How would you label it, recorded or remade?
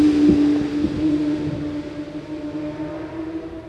recorded